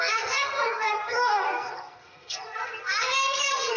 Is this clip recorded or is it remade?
remade